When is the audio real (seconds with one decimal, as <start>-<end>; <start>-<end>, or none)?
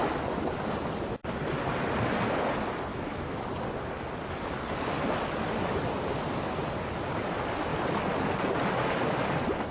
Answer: 0.0-2.9; 3.5-9.7